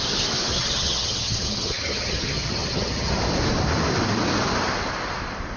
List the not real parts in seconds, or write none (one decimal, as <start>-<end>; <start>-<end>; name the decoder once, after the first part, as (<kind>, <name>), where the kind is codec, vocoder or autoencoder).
0.5-3.2 (vocoder, HiFi-GAN)

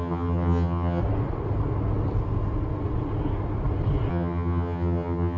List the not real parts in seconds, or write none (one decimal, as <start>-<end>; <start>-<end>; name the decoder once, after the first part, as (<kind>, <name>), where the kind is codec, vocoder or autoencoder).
0.0-1.0 (vocoder, HiFi-GAN); 4.1-5.4

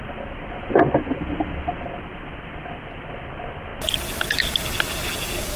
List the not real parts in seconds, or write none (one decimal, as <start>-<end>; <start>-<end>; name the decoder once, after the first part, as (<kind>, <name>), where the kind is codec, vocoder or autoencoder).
none